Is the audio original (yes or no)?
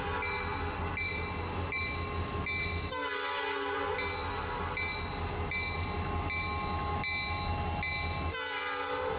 yes